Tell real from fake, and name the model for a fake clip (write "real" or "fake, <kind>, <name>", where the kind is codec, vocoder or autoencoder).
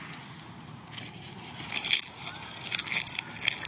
real